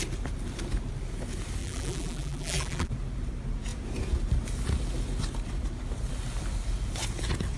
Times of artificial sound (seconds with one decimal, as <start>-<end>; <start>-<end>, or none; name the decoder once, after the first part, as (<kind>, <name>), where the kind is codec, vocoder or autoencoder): 1.6-2.9 (vocoder, BigVGAN v2)